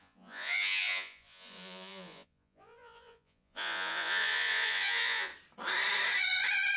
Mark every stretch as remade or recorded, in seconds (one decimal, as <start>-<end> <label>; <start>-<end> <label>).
0.0-5.3 remade; 5.3-6.8 recorded